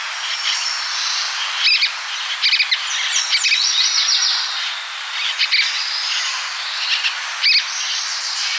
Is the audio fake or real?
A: real